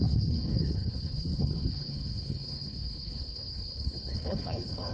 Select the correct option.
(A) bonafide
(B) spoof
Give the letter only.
B